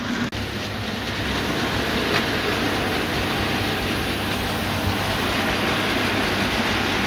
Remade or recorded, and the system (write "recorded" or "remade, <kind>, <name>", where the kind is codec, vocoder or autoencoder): recorded